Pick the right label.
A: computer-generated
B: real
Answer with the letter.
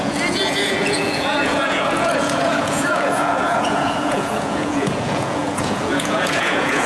A